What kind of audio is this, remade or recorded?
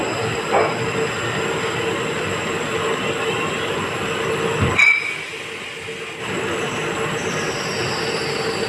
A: recorded